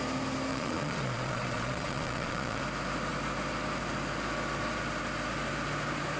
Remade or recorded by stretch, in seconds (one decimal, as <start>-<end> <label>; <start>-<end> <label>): 0.0-0.5 recorded; 0.5-2.6 remade; 2.6-6.2 recorded